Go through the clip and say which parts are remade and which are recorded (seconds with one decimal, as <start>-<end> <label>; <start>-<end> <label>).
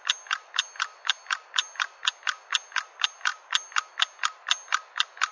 0.0-5.3 recorded